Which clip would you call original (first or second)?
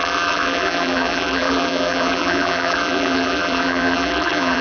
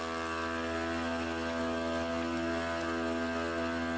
second